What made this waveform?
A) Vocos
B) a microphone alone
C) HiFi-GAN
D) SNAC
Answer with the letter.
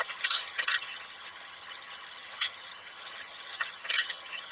C